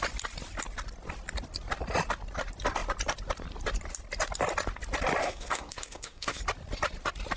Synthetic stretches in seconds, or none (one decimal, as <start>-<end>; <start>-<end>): 5.2-6.4